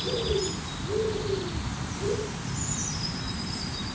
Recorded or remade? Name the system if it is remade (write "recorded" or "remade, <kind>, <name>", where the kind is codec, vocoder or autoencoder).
remade, vocoder, BigVGAN v2